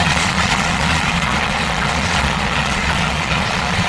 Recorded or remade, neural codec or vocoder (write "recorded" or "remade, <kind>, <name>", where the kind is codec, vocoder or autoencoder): remade, vocoder, Vocos